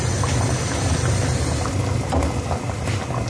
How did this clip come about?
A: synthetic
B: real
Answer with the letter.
B